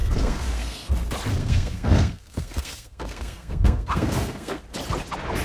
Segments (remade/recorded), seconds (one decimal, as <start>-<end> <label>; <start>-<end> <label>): 0.0-0.9 remade; 0.9-1.4 recorded; 1.4-4.6 remade; 4.6-5.4 recorded